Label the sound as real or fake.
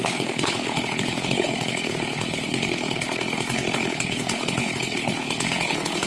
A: fake